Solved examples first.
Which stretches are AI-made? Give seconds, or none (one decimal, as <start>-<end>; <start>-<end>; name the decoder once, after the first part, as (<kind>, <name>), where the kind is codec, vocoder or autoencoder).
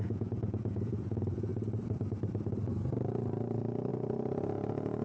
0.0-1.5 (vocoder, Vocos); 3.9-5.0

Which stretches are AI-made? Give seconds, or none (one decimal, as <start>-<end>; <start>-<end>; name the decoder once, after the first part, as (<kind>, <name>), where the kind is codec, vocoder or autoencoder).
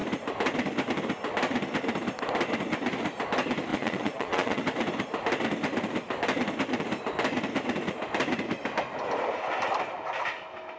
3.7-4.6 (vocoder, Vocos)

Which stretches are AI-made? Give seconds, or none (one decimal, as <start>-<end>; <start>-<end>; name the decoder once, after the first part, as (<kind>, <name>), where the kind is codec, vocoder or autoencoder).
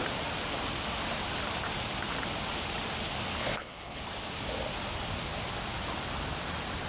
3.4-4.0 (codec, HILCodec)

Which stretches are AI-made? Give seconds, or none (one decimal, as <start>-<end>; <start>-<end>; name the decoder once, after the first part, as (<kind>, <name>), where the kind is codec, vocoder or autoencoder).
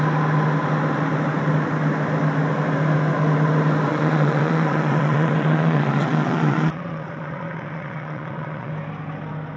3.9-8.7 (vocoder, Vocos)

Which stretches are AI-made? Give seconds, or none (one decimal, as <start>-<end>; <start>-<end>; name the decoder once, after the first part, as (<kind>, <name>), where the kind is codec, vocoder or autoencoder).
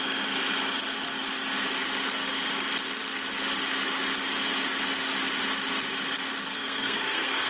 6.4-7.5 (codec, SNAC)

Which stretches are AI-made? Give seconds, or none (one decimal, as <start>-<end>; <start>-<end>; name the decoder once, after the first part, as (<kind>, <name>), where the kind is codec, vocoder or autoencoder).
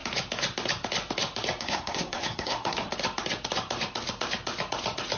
1.6-2.9 (codec, SNAC)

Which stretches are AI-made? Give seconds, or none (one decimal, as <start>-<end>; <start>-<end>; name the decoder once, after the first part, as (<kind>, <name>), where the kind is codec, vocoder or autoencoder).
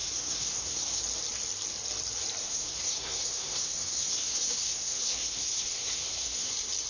0.0-1.0 (codec, SNAC); 2.4-6.5